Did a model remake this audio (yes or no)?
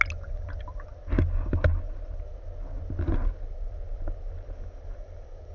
no